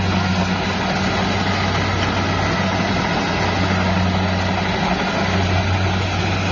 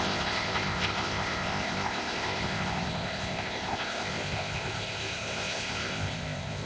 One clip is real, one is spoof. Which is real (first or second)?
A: first